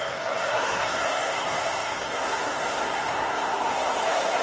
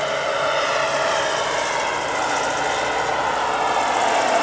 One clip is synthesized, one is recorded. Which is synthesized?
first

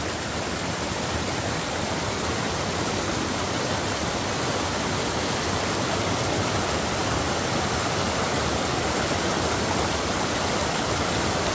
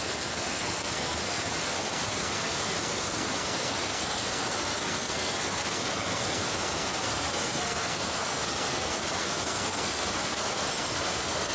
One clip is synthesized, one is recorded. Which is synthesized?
second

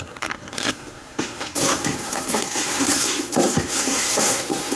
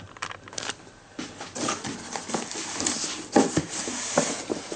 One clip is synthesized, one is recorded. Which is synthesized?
first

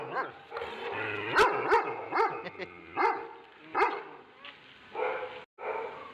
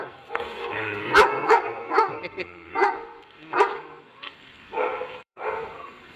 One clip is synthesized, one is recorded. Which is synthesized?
second